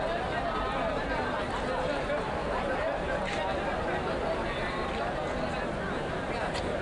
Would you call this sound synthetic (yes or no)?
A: no